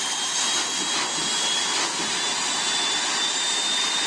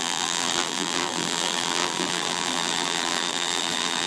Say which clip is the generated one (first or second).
second